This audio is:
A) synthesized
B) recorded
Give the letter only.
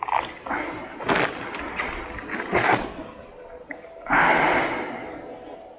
B